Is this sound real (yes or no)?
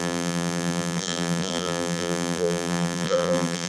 no